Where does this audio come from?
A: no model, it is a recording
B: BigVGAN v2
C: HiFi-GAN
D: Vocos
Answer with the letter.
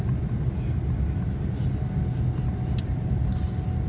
A